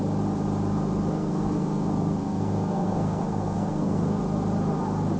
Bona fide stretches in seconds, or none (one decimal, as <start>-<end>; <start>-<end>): 0.0-1.1; 4.2-5.2